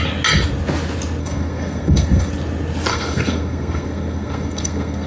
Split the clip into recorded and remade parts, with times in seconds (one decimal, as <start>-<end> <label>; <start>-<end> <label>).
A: 0.0-1.2 recorded; 1.2-2.3 remade; 2.3-2.9 recorded; 2.9-5.1 remade